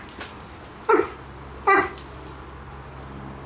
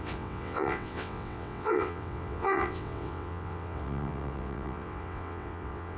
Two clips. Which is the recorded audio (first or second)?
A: first